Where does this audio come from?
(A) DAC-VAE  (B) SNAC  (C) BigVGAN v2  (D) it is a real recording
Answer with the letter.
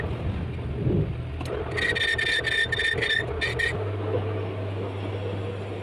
D